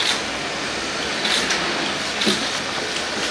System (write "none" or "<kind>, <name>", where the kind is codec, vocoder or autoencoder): none